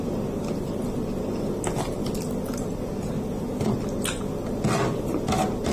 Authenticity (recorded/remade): recorded